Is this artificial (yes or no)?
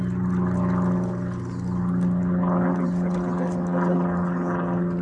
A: no